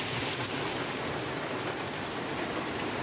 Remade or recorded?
recorded